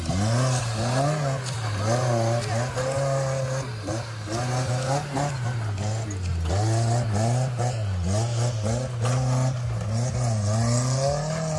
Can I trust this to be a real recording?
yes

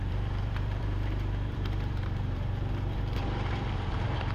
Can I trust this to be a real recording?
no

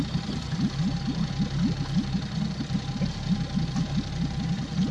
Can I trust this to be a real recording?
yes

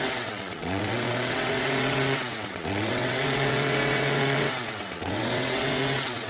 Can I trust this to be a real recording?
no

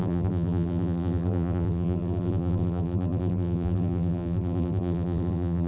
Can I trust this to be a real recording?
no